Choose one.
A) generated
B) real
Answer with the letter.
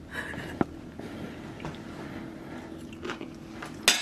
B